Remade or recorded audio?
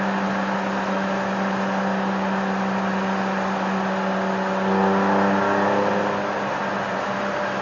recorded